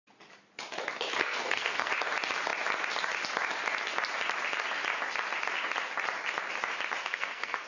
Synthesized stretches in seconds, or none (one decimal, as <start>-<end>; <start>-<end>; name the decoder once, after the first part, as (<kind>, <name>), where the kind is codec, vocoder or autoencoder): 1.2-1.9 (codec, SNAC); 7.0-7.7